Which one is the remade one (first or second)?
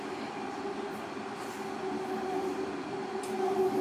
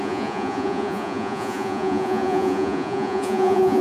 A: second